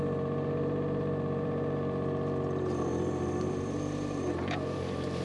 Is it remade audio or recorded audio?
remade